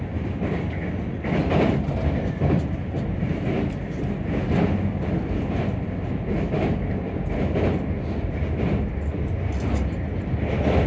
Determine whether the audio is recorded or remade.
recorded